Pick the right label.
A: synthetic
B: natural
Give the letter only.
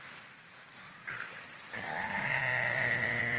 A